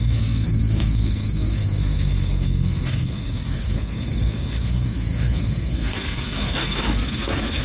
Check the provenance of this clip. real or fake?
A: fake